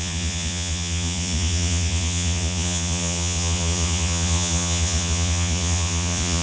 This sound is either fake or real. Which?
fake